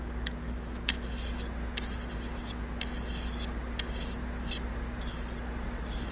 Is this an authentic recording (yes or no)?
yes